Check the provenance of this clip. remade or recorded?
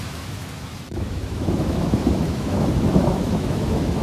remade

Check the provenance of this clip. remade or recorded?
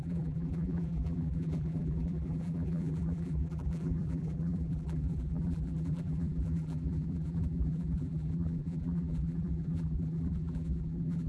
remade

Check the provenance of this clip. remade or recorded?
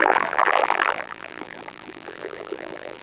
remade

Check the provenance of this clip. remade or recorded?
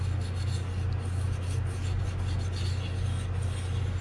recorded